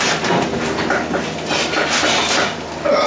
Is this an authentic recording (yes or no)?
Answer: yes